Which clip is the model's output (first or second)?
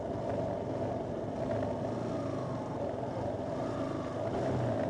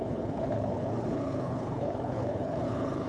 second